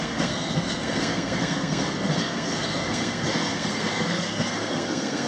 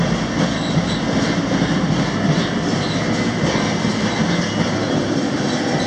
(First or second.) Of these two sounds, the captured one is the second